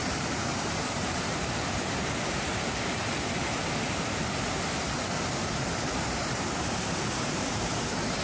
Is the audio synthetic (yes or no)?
yes